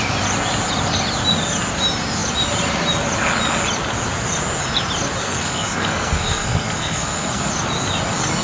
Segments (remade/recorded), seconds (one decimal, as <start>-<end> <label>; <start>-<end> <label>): 0.0-5.2 recorded; 5.2-7.5 remade; 7.5-8.4 recorded